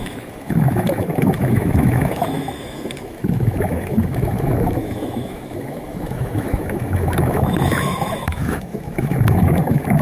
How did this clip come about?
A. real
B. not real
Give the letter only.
B